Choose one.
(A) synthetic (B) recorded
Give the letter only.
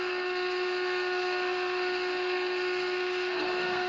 A